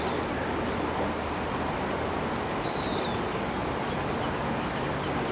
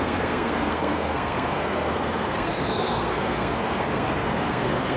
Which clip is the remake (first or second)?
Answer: second